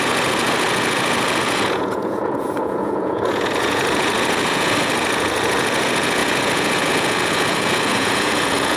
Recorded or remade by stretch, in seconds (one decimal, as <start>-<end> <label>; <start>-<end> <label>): 0.0-8.8 remade